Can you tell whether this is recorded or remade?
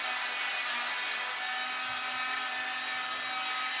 recorded